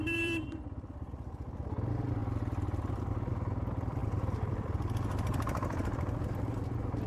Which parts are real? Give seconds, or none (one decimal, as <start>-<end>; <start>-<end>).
2.2-2.9